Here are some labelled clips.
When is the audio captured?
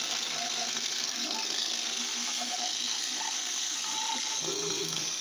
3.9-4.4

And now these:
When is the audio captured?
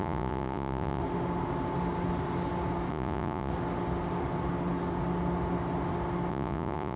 1.0-2.9; 3.5-6.3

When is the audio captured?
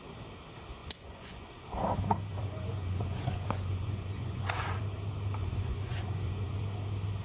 0.0-0.8; 1.6-2.3; 4.8-5.4; 6.6-7.2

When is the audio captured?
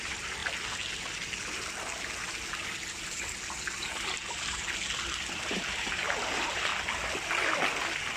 0.4-5.3; 6.7-8.2